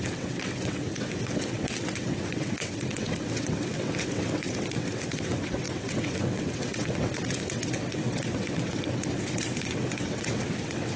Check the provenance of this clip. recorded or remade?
remade